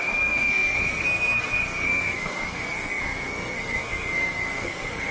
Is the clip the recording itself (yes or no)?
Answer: no